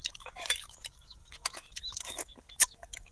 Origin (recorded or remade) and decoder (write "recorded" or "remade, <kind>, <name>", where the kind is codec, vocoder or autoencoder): remade, autoencoder, DAC-VAE